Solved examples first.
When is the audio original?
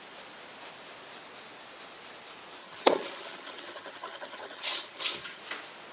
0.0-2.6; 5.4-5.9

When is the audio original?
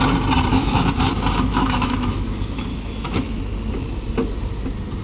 0.0-0.5; 1.1-1.5; 3.4-5.0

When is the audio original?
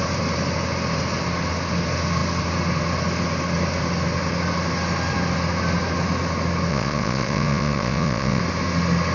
0.0-6.7; 8.4-9.1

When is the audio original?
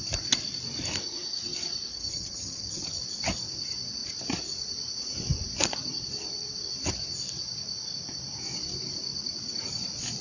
0.0-1.9; 3.0-10.2